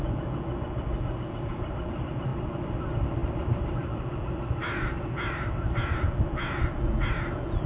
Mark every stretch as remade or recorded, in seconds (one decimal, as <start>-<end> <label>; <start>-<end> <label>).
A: 0.0-7.7 recorded